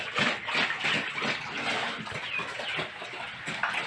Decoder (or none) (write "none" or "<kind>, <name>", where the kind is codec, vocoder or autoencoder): none